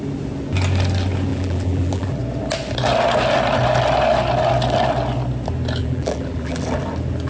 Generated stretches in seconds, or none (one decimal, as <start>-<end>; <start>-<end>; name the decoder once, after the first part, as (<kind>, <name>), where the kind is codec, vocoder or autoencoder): 1.3-2.2 (vocoder, BigVGAN v2); 5.8-6.6